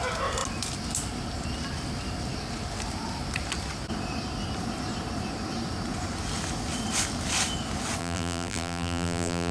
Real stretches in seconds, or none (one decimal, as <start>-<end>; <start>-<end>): 0.0-8.0